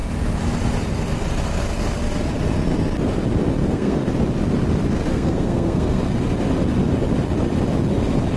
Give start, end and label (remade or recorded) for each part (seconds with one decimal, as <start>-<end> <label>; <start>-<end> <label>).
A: 0.0-3.6 recorded; 3.6-4.1 remade; 4.1-5.1 recorded; 5.1-6.0 remade; 6.0-8.4 recorded